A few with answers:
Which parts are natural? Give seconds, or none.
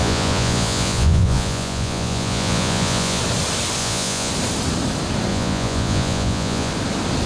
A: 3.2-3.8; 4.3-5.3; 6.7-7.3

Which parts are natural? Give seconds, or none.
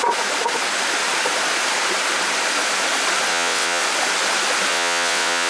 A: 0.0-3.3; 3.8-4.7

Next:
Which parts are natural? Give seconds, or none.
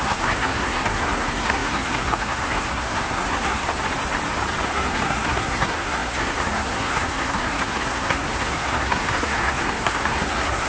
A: 3.7-4.6